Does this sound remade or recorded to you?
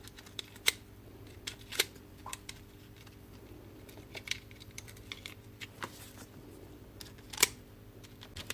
remade